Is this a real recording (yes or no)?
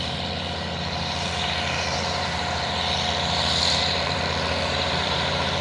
no